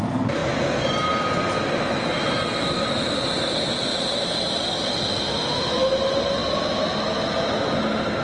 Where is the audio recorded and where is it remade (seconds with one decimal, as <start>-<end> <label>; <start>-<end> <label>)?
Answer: 0.0-8.2 recorded